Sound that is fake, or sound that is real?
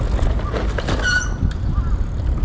real